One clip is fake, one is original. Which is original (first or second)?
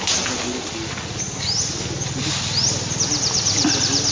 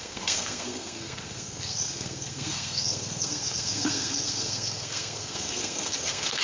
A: first